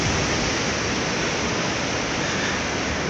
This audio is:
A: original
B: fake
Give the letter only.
A